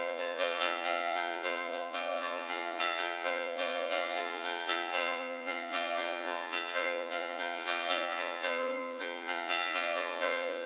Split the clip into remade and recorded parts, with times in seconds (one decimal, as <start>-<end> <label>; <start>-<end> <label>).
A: 0.0-10.7 remade